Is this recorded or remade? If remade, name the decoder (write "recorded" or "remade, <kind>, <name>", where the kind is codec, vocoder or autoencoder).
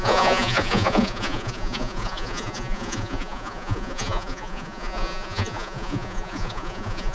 remade, vocoder, Vocos